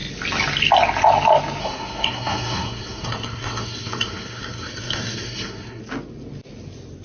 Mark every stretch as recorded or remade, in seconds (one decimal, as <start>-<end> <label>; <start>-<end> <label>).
0.0-1.6 recorded; 1.6-5.8 remade; 5.8-7.0 recorded